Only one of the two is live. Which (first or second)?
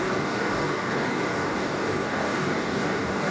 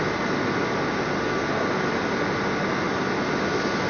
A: second